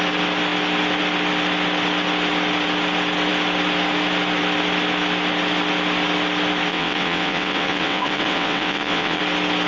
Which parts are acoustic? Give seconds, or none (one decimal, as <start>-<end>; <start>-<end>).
0.0-6.7; 9.2-9.7